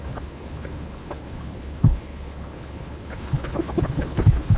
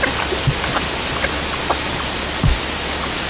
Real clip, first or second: second